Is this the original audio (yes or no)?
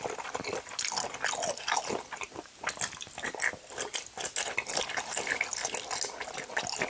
yes